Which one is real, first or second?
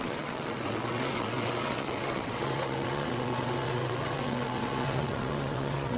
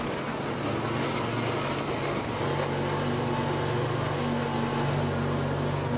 second